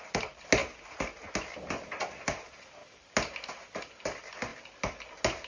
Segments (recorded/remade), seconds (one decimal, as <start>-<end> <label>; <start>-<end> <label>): 0.0-5.5 recorded